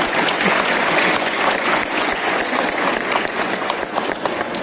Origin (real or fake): fake